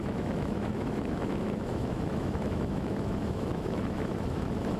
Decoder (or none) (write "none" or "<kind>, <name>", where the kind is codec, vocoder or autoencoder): autoencoder, DAC-VAE